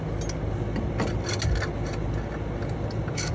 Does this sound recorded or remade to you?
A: recorded